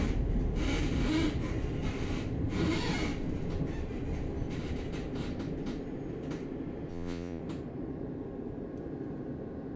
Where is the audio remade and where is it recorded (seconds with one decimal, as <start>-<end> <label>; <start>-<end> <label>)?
0.0-6.9 recorded; 6.9-7.4 remade; 7.4-9.8 recorded